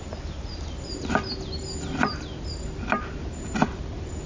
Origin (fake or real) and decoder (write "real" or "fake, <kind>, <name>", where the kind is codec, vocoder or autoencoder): real